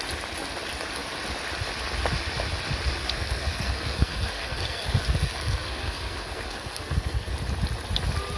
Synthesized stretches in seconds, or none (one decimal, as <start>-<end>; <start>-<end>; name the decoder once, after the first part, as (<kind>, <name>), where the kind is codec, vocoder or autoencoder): 3.0-7.3 (codec, SNAC)